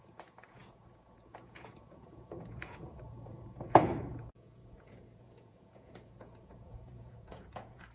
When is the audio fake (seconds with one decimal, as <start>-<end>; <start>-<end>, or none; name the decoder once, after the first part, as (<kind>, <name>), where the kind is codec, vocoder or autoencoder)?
0.0-7.9 (vocoder, Vocos)